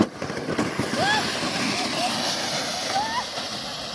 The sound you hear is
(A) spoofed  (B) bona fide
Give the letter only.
B